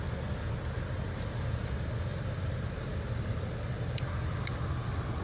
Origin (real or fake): real